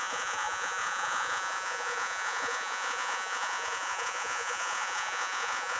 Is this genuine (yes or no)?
no